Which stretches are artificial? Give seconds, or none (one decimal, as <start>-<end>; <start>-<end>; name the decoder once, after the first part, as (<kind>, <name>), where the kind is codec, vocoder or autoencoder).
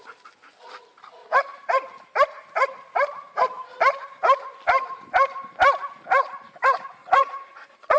7.0-8.0 (vocoder, Vocos)